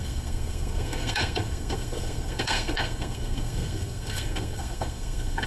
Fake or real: fake